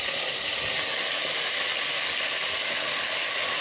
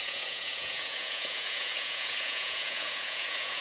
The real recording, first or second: first